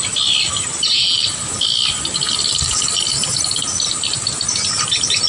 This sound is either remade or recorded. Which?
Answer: recorded